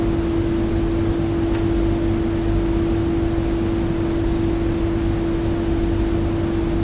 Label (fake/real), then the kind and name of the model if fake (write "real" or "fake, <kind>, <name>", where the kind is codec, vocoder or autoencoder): real